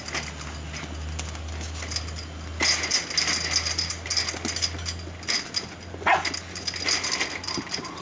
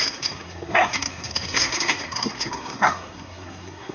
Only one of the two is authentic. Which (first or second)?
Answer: first